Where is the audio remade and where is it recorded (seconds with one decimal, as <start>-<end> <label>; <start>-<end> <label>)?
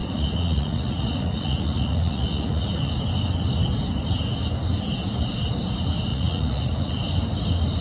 0.0-2.9 remade; 2.9-6.1 recorded; 6.1-6.9 remade; 6.9-7.8 recorded